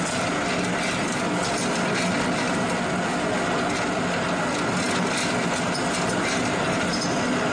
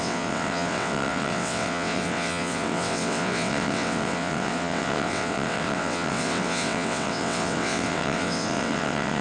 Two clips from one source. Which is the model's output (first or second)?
second